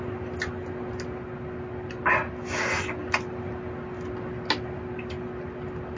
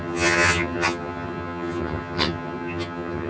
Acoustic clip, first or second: first